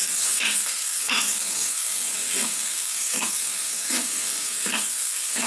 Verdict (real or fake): fake